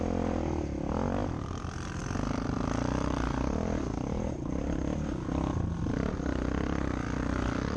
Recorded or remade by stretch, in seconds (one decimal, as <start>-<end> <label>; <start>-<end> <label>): 0.0-7.8 recorded